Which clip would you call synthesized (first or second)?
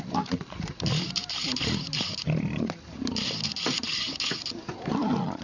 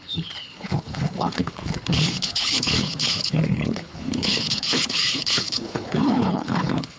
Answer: second